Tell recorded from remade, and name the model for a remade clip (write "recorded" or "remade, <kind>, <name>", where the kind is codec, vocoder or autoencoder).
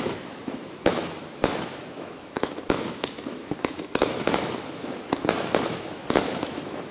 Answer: remade, autoencoder, DAC-VAE